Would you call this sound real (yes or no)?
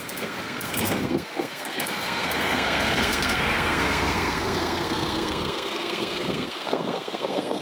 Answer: no